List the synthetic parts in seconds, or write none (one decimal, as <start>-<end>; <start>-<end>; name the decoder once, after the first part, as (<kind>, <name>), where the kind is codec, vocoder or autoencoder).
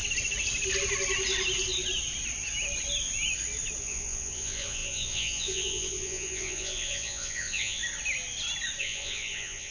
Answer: 3.8-7.8 (vocoder, Vocos); 8.8-9.7